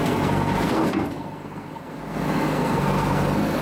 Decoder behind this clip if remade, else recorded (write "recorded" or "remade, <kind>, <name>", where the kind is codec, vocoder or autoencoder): remade, codec, SNAC